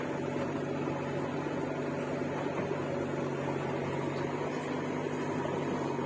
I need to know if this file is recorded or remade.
recorded